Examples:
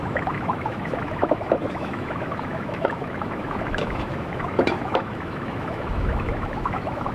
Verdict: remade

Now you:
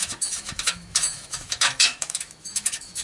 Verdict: remade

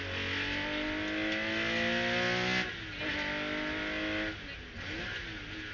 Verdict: recorded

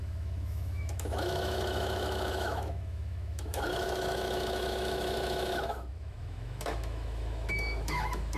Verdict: remade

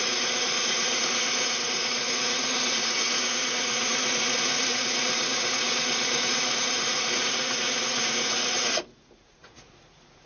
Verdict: remade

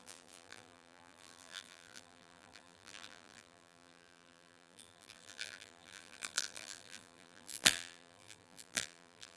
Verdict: remade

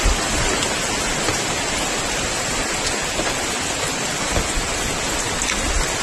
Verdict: recorded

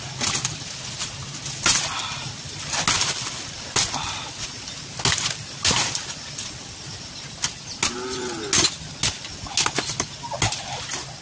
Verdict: recorded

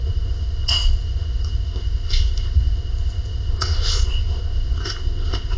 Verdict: remade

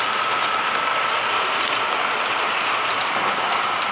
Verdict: recorded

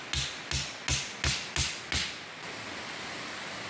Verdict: recorded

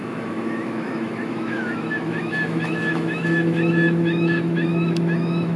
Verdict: remade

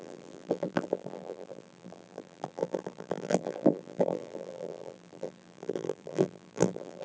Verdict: remade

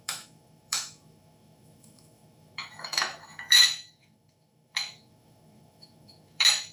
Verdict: remade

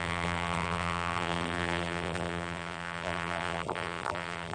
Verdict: remade